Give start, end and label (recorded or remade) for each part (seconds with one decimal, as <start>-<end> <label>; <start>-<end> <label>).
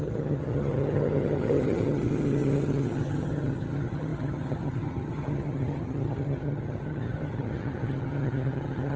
0.0-9.0 remade